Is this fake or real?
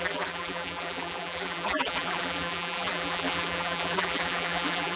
fake